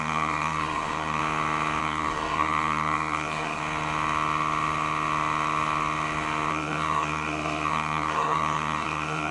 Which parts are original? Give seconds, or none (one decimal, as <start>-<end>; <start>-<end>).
1.2-1.8; 3.6-6.5